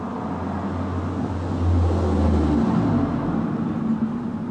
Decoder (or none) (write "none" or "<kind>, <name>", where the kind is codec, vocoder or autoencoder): none